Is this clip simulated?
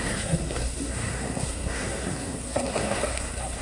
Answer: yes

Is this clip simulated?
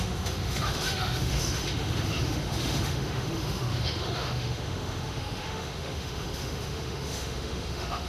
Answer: yes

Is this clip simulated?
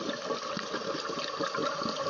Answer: no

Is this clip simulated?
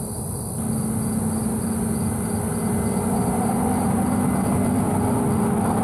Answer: no